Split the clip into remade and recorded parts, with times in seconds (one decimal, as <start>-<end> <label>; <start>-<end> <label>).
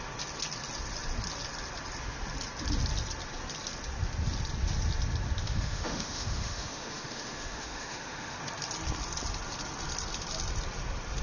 0.0-5.4 recorded; 5.4-8.4 remade; 8.4-11.2 recorded